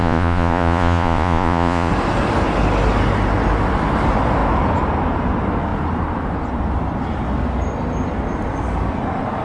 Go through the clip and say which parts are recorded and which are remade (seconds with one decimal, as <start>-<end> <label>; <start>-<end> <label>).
0.0-1.9 remade; 1.9-9.4 recorded